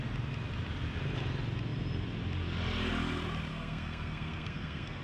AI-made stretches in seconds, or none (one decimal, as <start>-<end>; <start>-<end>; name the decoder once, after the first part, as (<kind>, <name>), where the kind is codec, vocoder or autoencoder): 3.5-5.0 (codec, SNAC)